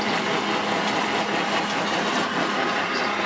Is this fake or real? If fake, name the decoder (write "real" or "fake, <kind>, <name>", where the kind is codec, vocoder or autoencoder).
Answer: real